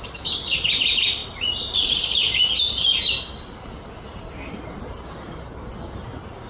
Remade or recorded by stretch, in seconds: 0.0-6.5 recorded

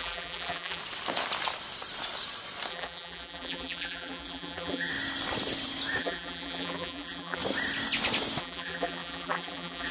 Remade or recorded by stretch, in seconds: 0.0-0.8 remade; 0.8-2.7 recorded; 2.7-4.9 remade; 4.9-6.0 recorded; 6.0-7.4 remade; 7.4-8.4 recorded; 8.4-9.9 remade